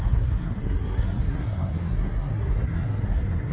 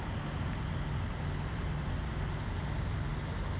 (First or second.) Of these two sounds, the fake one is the first